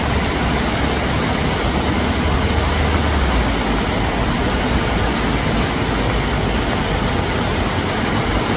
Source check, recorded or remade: recorded